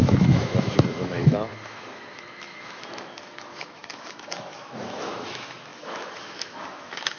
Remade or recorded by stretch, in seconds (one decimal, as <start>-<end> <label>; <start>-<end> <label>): 0.0-7.2 remade